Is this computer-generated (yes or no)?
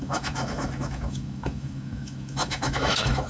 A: yes